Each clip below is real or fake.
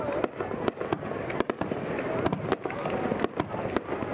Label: real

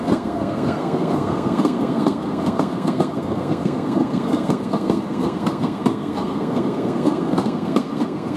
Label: fake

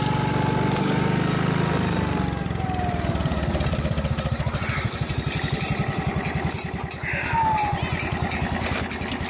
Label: real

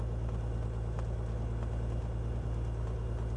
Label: real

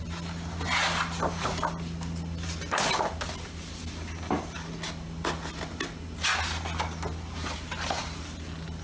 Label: real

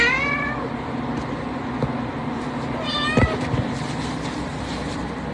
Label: real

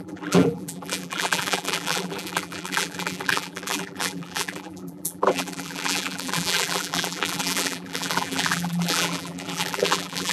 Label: fake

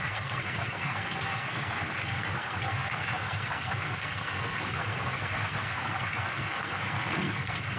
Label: fake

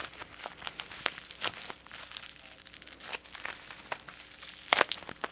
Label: real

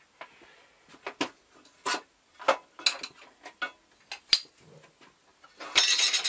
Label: real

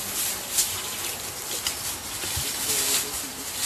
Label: real